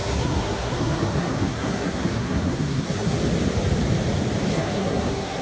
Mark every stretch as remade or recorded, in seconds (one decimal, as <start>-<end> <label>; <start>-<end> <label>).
0.0-3.2 remade; 3.2-4.5 recorded; 4.5-5.4 remade